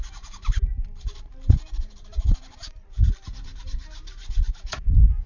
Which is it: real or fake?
fake